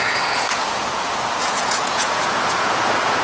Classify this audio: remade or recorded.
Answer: remade